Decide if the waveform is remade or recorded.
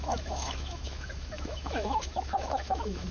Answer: remade